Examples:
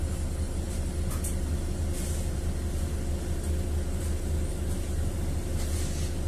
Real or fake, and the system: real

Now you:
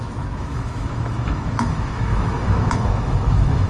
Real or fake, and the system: fake, autoencoder, DAC-VAE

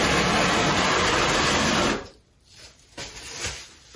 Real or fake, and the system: real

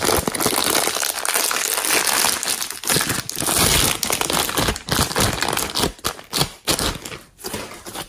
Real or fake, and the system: real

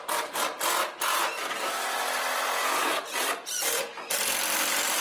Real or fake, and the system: real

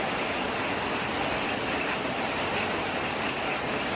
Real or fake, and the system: real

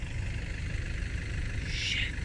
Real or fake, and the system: real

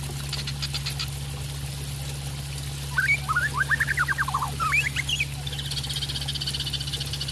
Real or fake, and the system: real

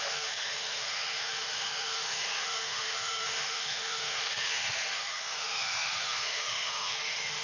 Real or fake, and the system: fake, autoencoder, DAC-VAE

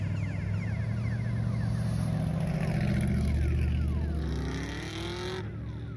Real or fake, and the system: real